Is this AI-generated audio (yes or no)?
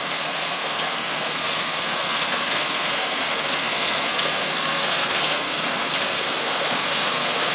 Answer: yes